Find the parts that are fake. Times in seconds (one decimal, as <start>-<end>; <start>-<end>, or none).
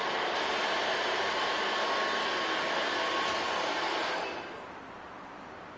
0.0-1.7